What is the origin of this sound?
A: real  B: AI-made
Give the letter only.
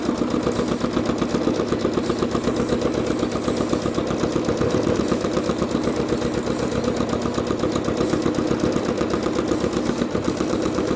A